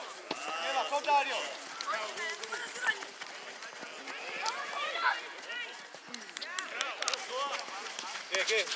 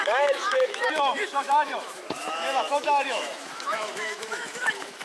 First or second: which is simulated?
second